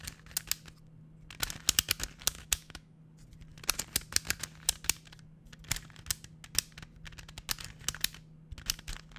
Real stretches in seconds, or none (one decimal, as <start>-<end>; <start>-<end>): 0.0-2.3; 3.0-9.2